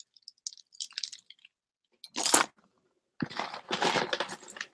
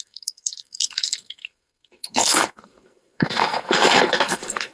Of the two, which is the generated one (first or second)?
second